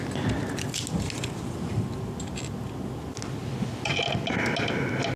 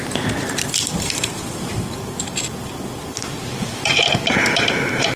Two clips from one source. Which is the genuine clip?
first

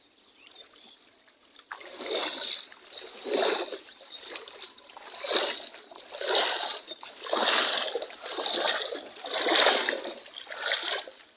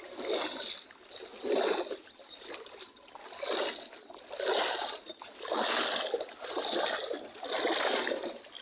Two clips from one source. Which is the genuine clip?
second